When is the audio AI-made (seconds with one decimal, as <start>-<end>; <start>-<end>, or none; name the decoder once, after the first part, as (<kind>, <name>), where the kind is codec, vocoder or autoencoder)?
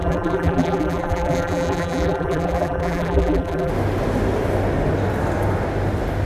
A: 0.0-3.7 (vocoder, BigVGAN v2)